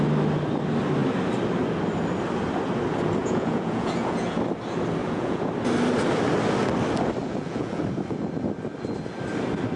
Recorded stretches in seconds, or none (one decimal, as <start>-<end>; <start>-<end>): 0.0-3.2; 4.4-5.0; 5.5-7.2; 7.8-9.8